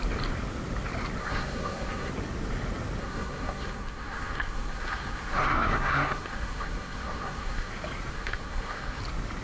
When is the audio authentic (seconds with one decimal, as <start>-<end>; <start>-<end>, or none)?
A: 0.0-1.2; 2.1-3.0; 7.7-8.1; 9.0-9.4